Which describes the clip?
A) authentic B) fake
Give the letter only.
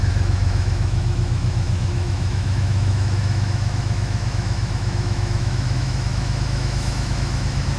B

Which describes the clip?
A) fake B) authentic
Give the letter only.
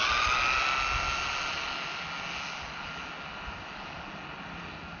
B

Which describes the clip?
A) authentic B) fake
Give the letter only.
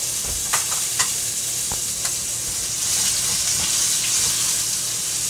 A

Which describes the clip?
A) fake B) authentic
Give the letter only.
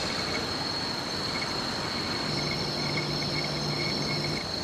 B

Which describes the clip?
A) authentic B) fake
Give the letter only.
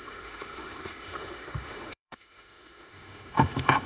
B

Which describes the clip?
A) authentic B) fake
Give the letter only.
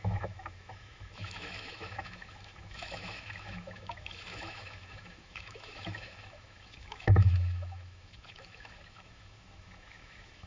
B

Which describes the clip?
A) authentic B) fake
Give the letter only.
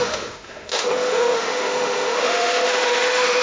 B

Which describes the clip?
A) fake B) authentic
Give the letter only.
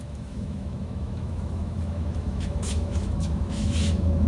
A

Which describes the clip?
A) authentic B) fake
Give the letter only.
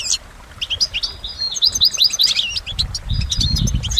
A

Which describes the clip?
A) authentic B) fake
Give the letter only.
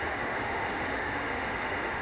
B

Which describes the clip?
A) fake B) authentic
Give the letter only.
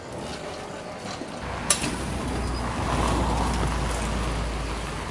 B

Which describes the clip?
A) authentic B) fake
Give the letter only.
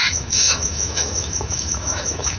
B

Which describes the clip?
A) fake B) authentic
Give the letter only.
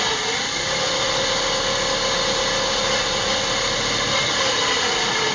B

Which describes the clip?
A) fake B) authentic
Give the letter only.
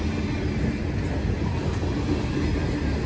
B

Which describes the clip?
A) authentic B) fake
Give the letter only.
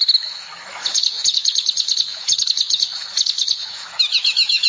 B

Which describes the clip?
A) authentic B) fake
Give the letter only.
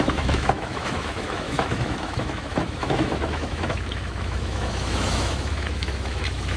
B